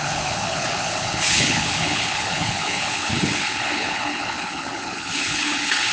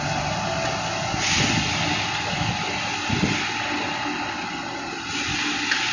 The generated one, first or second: first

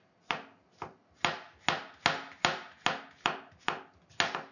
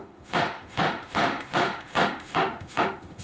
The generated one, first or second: second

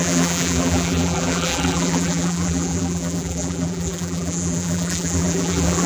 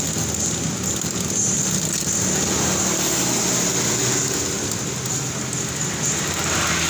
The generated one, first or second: first